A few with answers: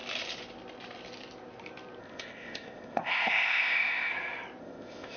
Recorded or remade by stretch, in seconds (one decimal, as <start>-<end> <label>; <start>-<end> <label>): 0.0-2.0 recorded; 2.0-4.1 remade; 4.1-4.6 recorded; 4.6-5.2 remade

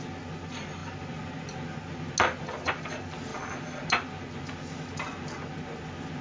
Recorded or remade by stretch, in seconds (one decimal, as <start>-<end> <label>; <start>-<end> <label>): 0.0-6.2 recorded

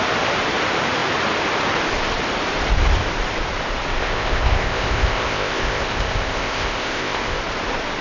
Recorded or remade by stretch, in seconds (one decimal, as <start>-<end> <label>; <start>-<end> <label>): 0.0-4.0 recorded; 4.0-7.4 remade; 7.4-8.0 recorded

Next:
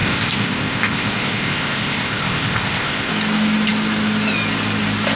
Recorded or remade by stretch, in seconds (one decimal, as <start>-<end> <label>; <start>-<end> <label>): 0.0-3.1 remade; 3.1-5.2 recorded